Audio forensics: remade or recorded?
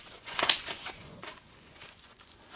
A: remade